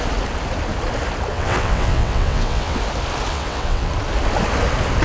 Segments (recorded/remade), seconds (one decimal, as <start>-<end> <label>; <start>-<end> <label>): 0.0-1.3 recorded; 1.3-2.8 remade; 2.8-3.3 recorded; 3.3-3.9 remade; 3.9-5.0 recorded